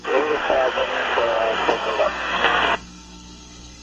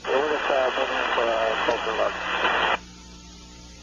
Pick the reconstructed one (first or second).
first